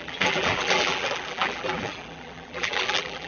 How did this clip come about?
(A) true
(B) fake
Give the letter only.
B